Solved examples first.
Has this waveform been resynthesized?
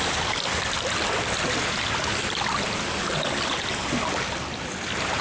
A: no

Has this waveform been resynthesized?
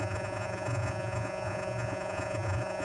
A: yes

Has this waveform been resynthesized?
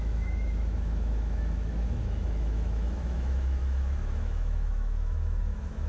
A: yes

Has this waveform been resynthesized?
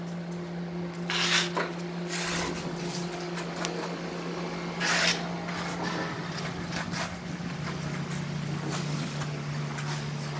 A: no